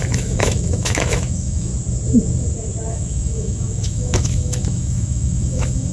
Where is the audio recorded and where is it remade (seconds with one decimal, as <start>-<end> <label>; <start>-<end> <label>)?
0.0-1.7 remade; 1.7-2.9 recorded; 2.9-5.9 remade